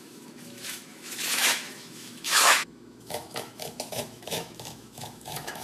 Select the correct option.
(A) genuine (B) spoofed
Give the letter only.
B